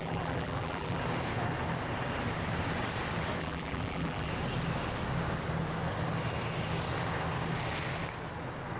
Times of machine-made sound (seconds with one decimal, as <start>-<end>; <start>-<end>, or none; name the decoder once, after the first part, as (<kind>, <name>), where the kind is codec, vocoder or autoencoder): 0.0-1.0 (vocoder, BigVGAN v2); 3.4-4.3